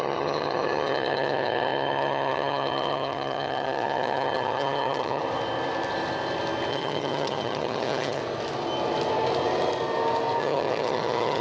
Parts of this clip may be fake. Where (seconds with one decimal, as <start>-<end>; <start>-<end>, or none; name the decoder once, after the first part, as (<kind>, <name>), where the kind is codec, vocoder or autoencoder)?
0.0-5.2 (vocoder, HiFi-GAN); 6.7-8.2; 10.4-11.4

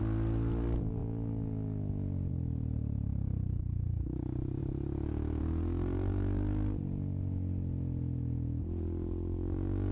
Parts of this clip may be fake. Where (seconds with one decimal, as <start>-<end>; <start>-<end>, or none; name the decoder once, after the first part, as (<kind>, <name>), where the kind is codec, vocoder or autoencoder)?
none

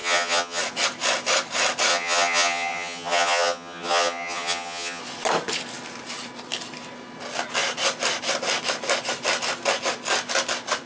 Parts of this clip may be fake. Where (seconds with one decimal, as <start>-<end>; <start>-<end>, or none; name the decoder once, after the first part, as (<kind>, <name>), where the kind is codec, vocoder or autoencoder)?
0.0-0.6 (vocoder, HiFi-GAN); 1.9-5.0